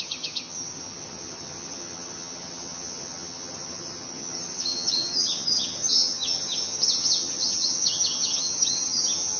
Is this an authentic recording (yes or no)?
no